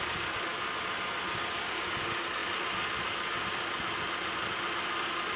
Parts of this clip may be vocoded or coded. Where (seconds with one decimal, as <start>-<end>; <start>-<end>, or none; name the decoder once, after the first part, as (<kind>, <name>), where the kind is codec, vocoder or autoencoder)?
none